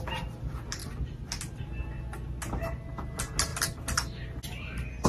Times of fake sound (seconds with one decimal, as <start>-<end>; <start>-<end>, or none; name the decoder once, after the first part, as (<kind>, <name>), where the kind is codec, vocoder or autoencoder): none